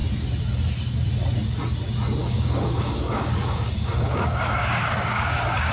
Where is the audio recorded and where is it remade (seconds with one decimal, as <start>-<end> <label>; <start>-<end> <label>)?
0.0-2.2 recorded; 2.2-5.7 remade